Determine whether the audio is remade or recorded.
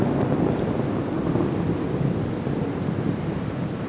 recorded